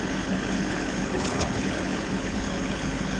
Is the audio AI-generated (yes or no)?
yes